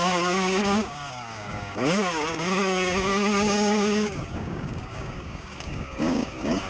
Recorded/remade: remade